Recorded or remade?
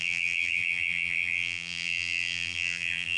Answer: remade